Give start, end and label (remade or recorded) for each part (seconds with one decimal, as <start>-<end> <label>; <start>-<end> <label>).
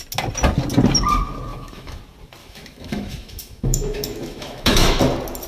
0.0-1.5 recorded; 1.5-2.0 remade; 2.0-2.4 recorded; 2.4-5.0 remade; 5.0-5.5 recorded